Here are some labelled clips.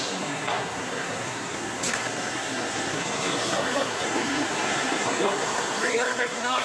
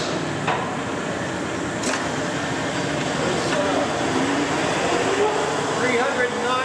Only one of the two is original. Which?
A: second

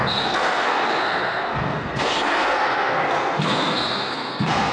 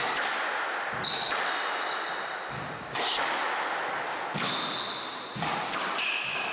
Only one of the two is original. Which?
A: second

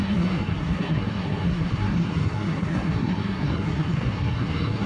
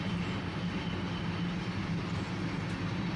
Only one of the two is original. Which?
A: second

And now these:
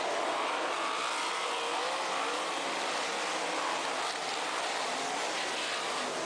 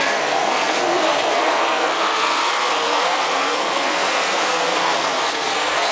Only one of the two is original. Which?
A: first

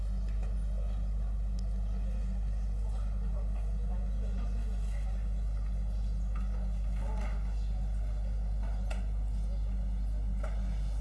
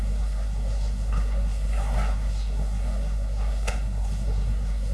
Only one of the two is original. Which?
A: first